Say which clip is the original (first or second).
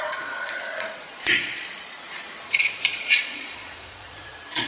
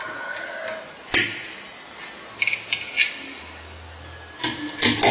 second